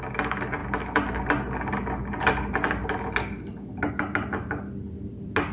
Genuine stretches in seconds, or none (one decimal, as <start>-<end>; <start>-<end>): 0.0-5.5